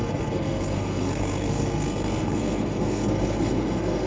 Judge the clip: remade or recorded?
remade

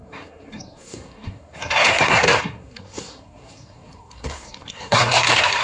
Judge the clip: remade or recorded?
remade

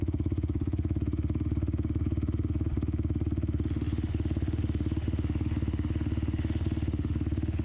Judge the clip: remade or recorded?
remade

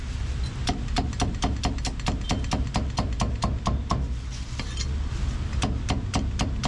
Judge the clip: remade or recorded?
recorded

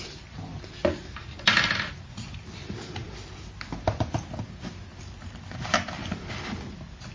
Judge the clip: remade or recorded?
recorded